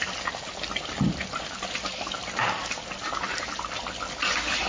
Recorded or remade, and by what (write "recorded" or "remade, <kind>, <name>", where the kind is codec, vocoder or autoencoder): recorded